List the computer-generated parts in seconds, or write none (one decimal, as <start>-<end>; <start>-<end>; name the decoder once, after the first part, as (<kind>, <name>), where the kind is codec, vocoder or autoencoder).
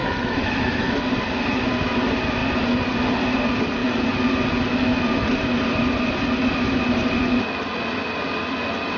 0.0-1.0 (autoencoder, DAC-VAE)